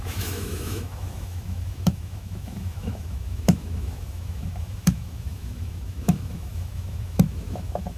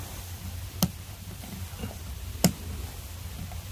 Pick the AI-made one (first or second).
first